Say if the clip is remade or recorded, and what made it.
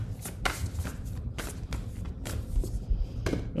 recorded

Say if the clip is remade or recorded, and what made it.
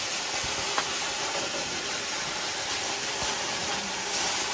recorded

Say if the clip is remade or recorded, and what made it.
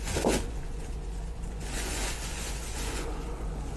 remade, vocoder, Vocos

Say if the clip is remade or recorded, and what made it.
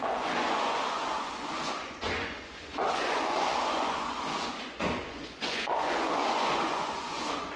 remade, vocoder, Vocos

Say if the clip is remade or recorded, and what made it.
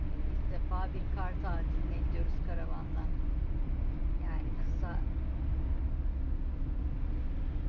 recorded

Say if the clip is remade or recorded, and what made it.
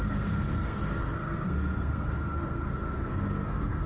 remade, codec, SNAC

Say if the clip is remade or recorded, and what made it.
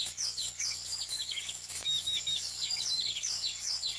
remade, codec, DAC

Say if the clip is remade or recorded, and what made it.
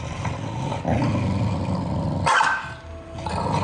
recorded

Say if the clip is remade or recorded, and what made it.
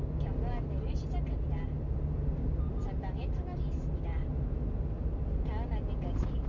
recorded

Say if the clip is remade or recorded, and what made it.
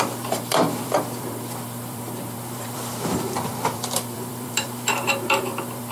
remade, vocoder, BigVGAN v2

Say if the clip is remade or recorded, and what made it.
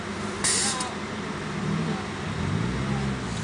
recorded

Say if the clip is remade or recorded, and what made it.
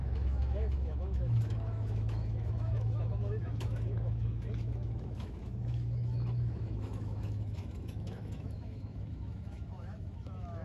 remade, autoencoder, DAC-VAE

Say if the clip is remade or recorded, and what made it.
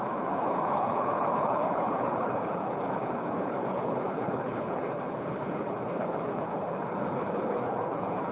remade, codec, HILCodec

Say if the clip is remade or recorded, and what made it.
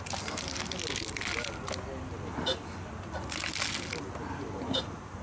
recorded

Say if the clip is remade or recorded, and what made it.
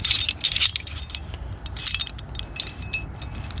recorded